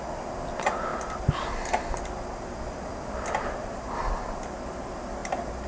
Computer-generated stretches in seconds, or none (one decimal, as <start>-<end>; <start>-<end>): none